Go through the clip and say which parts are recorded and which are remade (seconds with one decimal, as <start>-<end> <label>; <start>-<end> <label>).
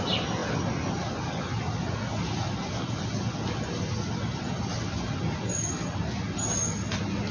0.0-7.3 recorded